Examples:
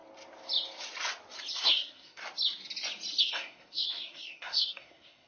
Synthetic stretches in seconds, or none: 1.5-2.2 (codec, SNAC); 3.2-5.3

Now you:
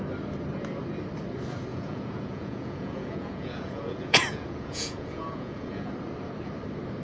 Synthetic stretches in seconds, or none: 1.7-5.9 (vocoder, Vocos)